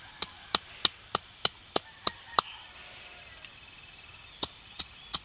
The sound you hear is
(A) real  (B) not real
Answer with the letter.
A